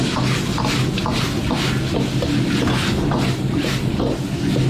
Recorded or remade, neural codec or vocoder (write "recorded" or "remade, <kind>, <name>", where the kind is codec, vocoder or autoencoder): recorded